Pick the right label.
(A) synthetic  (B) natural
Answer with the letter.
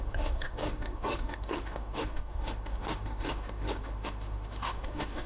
A